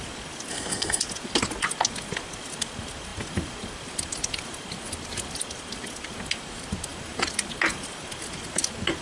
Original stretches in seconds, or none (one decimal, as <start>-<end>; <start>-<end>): 0.0-0.5; 1.0-9.0